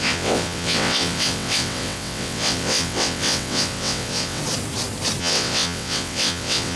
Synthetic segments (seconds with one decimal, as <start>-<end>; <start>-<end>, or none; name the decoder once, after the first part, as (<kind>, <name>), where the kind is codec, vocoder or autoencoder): 0.0-4.4 (vocoder, WaveNeXt); 5.2-6.8